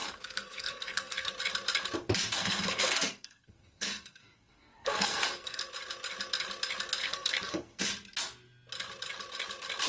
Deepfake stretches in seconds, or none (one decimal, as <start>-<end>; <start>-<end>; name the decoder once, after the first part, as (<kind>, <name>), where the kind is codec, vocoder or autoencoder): 0.0-1.3 (codec, SNAC); 2.3-5.6; 7.0-7.8